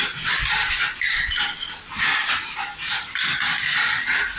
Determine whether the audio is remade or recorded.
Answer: recorded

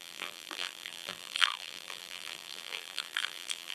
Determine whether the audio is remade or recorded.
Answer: remade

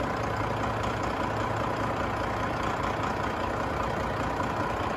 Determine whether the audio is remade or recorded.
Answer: recorded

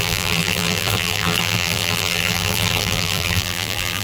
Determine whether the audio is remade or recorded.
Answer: remade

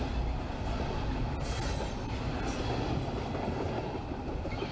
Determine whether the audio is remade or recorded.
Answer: recorded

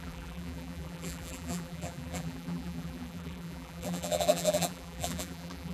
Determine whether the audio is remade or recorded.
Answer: remade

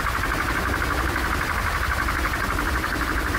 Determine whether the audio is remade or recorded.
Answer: recorded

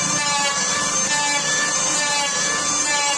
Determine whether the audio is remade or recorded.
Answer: remade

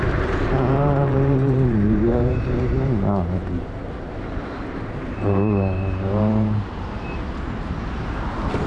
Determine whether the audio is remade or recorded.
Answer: remade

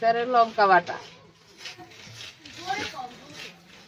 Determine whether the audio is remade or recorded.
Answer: recorded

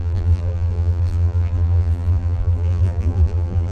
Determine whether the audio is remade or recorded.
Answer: remade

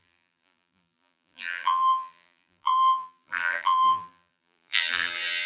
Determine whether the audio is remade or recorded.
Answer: remade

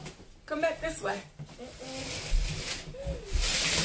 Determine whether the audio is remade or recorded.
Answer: recorded